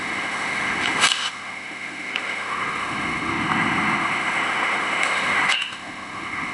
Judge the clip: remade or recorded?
remade